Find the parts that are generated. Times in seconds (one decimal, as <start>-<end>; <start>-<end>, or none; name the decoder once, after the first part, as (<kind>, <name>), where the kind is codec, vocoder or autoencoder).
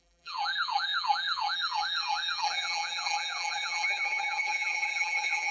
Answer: 0.0-5.5 (vocoder, BigVGAN v2)